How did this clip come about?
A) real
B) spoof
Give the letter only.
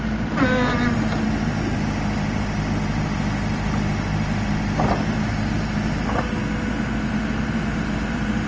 A